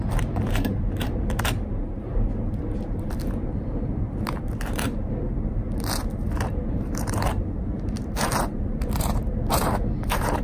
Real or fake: fake